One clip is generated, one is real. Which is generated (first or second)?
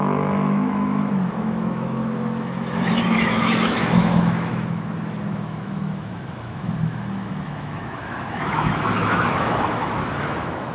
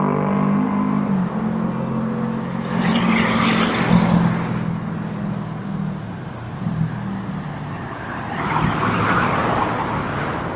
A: first